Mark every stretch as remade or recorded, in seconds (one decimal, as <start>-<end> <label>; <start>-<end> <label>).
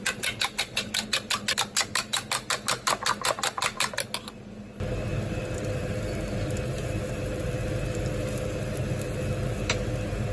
0.0-10.3 recorded